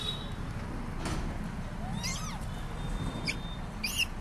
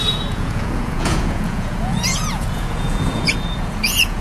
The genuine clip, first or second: first